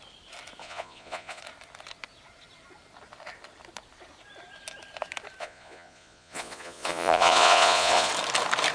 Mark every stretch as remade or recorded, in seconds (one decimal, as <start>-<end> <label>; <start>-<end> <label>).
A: 0.0-0.6 recorded; 0.6-1.4 remade; 1.4-5.4 recorded; 5.4-8.1 remade; 8.1-8.7 recorded